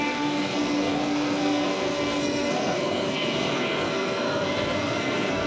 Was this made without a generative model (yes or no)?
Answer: no